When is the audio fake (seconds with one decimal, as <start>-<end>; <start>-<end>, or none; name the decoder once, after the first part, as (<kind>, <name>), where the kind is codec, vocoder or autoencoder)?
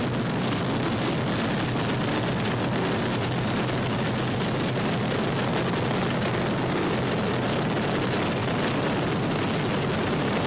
none